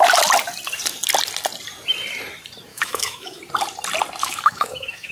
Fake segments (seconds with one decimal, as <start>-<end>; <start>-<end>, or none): 2.7-3.4; 4.2-5.1